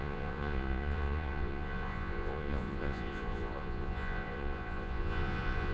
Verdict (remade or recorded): remade